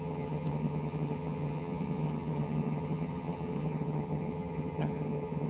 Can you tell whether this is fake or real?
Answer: fake